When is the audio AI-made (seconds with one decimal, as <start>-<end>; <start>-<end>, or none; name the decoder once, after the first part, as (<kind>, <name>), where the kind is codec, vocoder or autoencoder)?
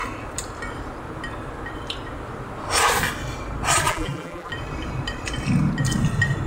3.9-4.5 (vocoder, BigVGAN v2)